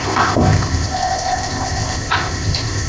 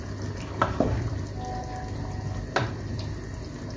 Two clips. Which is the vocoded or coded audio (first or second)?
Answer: first